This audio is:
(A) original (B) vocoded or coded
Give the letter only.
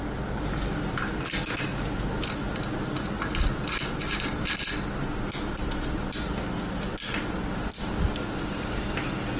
A